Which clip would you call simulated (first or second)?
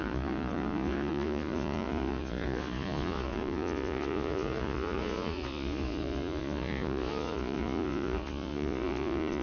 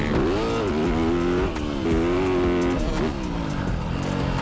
first